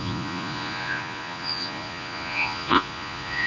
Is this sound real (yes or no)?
no